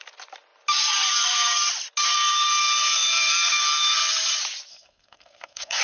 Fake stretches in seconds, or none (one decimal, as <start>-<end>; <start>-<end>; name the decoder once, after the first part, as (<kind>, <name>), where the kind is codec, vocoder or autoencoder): 4.7-5.8 (codec, SNAC)